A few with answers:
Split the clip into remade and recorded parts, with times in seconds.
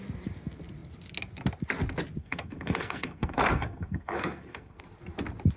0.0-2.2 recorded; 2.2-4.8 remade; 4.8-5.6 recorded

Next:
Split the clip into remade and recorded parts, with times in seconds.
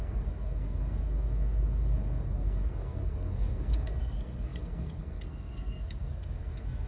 0.0-6.9 remade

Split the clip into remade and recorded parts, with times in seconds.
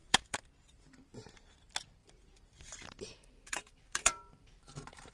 0.0-0.5 remade; 0.5-2.0 recorded; 2.0-5.1 remade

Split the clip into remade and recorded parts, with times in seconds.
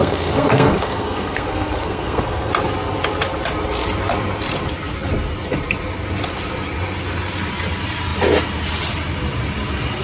0.0-2.5 remade; 2.5-10.0 recorded